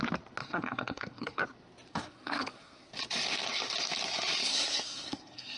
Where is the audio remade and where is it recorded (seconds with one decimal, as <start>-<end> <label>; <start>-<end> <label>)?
0.0-0.4 recorded; 0.4-1.4 remade; 1.4-1.9 recorded; 1.9-2.9 remade; 2.9-4.4 recorded; 4.4-5.6 remade